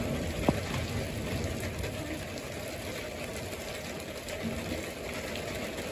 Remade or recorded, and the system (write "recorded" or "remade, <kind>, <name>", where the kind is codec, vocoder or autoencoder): recorded